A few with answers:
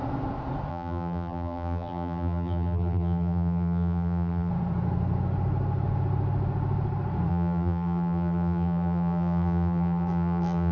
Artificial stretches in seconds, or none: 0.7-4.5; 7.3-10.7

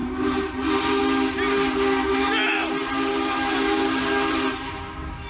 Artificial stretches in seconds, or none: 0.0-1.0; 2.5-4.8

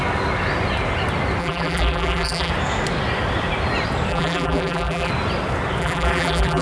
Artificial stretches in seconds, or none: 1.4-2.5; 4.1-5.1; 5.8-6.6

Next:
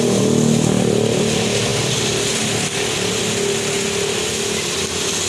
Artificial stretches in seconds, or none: none

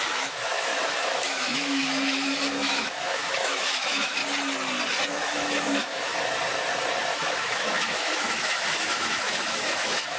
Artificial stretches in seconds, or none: 0.0-4.2; 5.1-6.1; 7.1-10.2

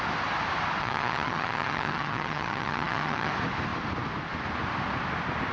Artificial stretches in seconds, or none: 0.8-3.3